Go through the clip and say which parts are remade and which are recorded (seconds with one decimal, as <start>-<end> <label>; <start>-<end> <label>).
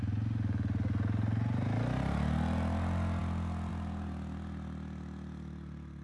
0.0-6.0 recorded